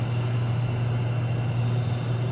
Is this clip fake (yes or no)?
no